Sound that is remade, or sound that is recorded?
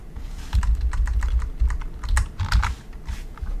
recorded